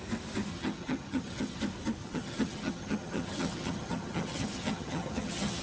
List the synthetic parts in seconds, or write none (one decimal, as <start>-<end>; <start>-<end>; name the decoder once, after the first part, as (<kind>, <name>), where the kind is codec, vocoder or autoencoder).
0.5-1.6 (vocoder, HiFi-GAN); 2.0-5.6